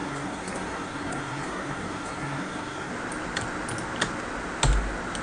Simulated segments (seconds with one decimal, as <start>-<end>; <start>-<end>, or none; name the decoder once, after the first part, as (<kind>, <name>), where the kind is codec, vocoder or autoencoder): 0.0-2.9 (codec, SNAC)